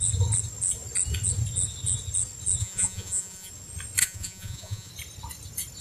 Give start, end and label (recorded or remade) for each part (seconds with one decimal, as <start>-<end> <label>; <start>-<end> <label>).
0.0-2.6 recorded; 2.6-3.5 remade; 3.5-4.0 recorded; 4.0-4.9 remade; 4.9-5.8 recorded